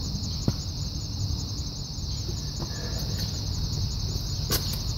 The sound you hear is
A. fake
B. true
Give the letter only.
B